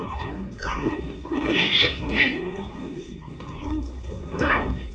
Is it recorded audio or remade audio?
remade